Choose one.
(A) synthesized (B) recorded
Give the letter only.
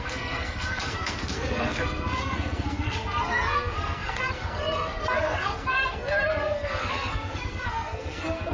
A